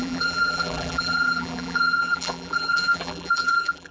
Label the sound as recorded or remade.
remade